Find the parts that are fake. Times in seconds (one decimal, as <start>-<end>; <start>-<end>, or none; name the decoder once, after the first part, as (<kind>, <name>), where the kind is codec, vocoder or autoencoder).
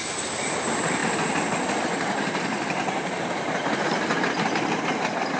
none